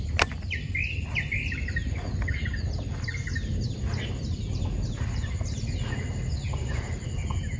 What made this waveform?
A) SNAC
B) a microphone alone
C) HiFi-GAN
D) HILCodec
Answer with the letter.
B